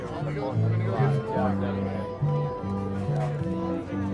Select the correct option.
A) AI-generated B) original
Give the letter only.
B